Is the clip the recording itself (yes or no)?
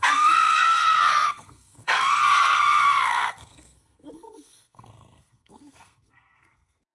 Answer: no